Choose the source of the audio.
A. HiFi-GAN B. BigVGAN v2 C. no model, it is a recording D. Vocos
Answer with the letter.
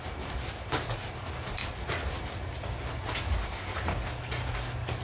C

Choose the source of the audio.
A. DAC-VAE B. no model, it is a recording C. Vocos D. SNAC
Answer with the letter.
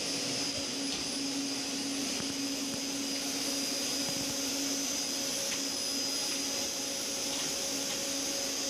B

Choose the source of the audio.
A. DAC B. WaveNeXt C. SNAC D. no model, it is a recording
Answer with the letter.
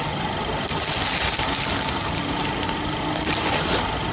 D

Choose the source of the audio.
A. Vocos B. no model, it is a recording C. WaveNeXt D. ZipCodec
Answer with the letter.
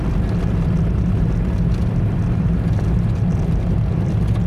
B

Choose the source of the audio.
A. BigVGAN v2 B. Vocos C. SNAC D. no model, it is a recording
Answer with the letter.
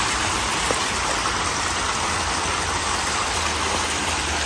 D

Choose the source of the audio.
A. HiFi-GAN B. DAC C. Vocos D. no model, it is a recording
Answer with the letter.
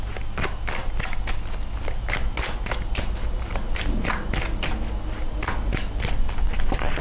D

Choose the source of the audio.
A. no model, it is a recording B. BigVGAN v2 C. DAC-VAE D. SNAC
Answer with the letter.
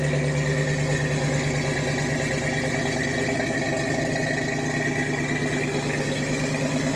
A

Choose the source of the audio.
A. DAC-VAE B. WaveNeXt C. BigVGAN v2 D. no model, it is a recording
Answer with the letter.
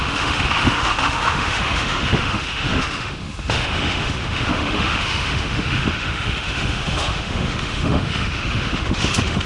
A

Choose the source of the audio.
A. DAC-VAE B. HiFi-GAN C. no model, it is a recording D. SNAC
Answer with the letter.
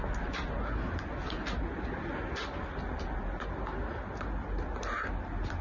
C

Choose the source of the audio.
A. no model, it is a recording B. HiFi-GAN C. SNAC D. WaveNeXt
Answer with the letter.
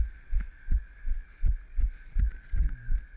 A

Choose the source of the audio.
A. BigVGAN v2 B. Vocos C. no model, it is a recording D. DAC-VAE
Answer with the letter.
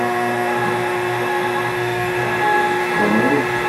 D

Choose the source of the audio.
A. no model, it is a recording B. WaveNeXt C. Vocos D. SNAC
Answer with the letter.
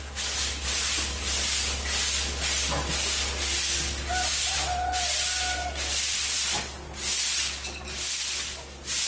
A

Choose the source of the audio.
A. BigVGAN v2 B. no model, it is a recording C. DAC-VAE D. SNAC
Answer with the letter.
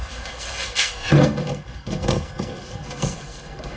D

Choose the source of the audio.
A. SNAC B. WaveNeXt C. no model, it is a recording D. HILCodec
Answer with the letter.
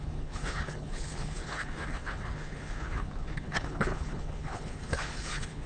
D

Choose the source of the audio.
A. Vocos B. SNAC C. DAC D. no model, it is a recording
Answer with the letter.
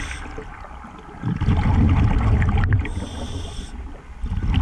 D